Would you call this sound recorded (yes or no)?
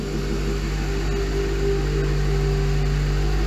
yes